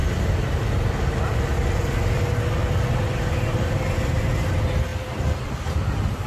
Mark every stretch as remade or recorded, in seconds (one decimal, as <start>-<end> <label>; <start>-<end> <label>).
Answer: 0.0-6.3 recorded